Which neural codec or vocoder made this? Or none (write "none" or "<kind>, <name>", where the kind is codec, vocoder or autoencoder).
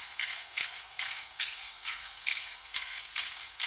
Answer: codec, SNAC